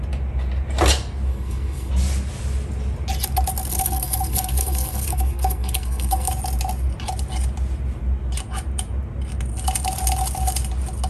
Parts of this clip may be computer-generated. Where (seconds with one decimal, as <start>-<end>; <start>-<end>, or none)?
1.3-1.9; 3.7-6.3